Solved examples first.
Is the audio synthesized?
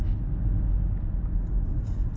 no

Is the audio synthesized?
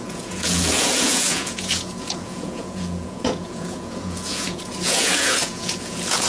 yes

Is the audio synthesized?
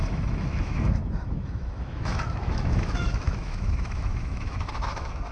yes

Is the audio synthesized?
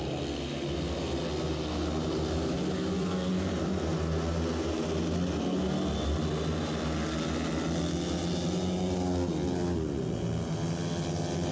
no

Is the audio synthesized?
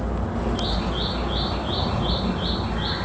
no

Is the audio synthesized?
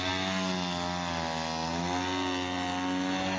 no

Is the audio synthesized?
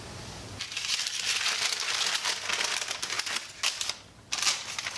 no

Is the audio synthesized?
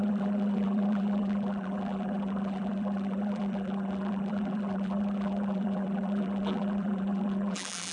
yes